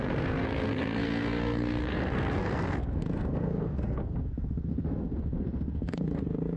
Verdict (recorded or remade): remade